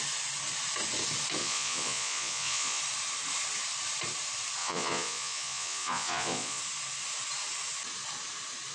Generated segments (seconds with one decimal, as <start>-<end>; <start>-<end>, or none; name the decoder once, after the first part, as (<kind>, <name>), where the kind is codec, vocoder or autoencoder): 1.4-2.8 (vocoder, Vocos); 4.6-6.6